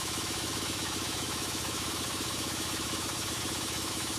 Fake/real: fake